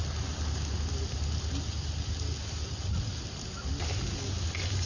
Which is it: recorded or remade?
recorded